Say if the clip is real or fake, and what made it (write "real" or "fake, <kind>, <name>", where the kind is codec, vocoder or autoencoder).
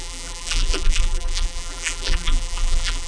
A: fake, vocoder, BigVGAN v2